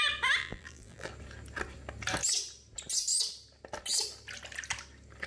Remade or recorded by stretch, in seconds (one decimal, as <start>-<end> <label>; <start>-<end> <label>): 0.0-0.4 recorded; 0.4-1.1 remade; 1.1-5.3 recorded

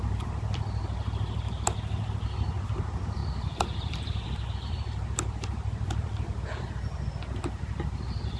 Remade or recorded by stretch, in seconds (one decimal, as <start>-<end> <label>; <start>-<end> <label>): 0.0-3.2 recorded; 3.2-7.1 remade; 7.1-8.4 recorded

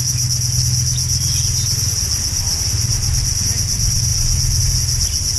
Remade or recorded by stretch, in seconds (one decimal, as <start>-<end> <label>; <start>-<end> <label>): 0.0-5.4 recorded